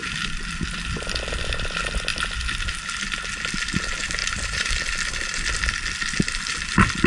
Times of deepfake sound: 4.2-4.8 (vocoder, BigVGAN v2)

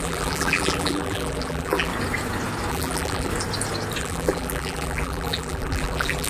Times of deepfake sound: 0.0-1.9 (vocoder, BigVGAN v2); 2.7-3.3; 4.0-6.3

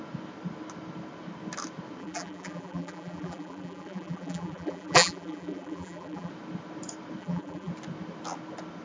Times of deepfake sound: 2.0-6.3 (vocoder, BigVGAN v2); 7.2-7.7

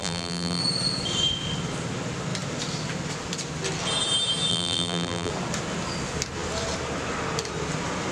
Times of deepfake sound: 0.0-0.6 (vocoder, BigVGAN v2); 4.5-5.3